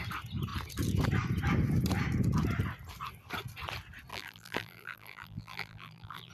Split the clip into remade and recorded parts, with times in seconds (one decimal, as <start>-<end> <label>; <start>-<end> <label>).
0.0-4.1 recorded; 4.1-6.3 remade